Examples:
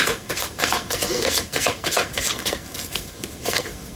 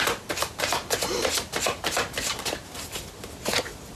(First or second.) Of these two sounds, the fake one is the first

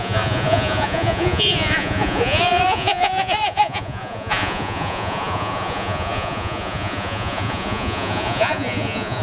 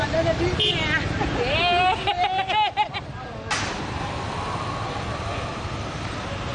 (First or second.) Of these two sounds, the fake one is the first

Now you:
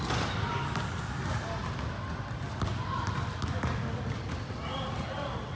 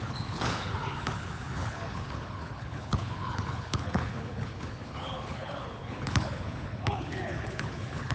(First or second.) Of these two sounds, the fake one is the second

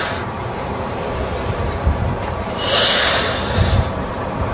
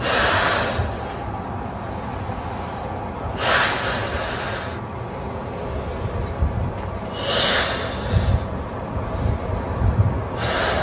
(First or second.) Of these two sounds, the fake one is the first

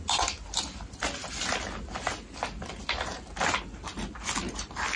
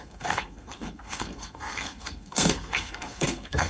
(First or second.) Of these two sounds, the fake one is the second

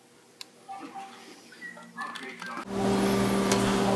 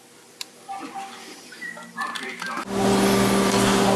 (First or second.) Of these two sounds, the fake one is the second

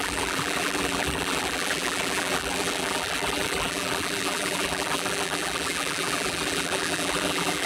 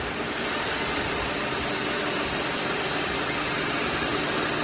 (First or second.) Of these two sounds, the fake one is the first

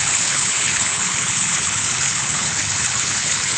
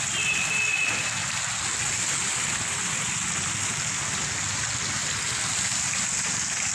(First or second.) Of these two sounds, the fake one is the first